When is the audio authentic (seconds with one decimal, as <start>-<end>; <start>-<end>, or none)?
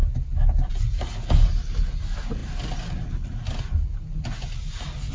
0.0-5.1